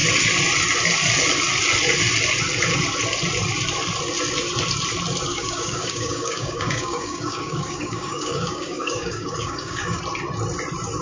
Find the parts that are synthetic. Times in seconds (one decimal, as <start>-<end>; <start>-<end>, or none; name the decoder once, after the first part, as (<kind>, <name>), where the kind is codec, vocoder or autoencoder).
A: 5.3-10.0 (codec, DAC)